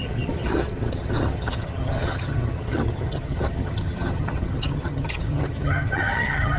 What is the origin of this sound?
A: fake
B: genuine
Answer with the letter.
A